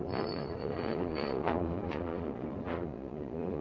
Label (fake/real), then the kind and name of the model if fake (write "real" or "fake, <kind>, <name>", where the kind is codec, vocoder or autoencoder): fake, vocoder, Vocos